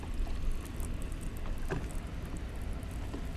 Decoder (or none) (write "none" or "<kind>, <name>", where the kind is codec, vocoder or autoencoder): none